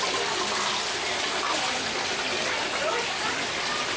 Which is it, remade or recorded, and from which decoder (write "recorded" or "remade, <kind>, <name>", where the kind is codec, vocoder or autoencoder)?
recorded